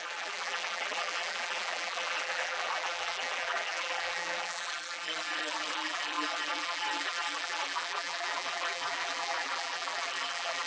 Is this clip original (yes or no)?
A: no